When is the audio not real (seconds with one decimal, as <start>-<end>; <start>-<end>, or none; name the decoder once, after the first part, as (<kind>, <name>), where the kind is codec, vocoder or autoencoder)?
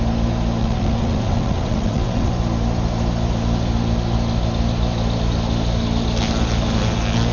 0.6-2.3 (vocoder, WaveNeXt)